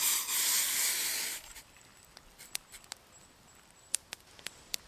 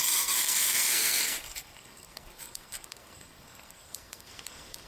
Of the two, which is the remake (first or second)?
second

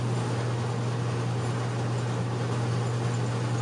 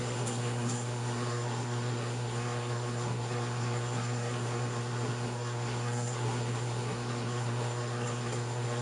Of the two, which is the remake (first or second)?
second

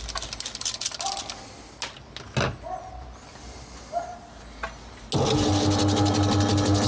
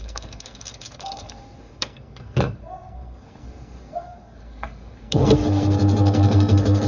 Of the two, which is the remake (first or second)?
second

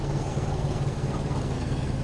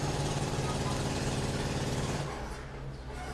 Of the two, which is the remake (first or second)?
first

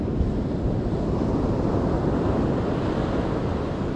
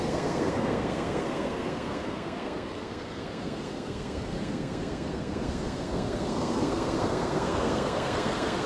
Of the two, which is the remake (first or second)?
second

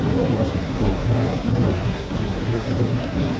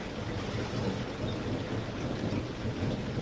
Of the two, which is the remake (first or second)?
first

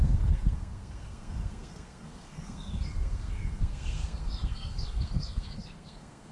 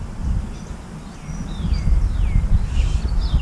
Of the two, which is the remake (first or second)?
first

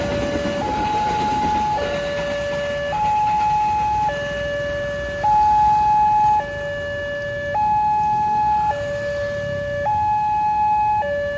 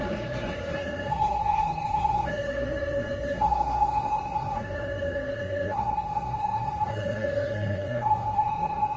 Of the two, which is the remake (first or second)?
second